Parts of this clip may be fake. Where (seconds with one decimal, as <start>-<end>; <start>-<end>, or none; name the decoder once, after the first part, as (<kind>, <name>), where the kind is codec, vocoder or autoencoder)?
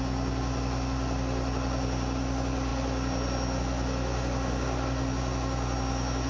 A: none